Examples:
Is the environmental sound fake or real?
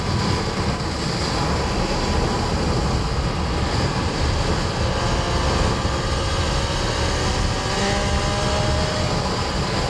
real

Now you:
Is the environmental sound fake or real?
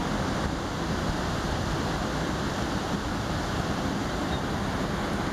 real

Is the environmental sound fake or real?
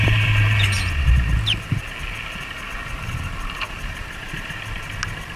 real